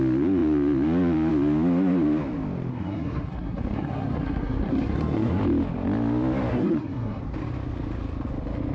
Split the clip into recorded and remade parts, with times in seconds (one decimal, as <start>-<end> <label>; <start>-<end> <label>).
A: 0.0-2.7 recorded; 2.7-5.4 remade; 5.4-6.5 recorded; 6.5-7.2 remade; 7.2-8.7 recorded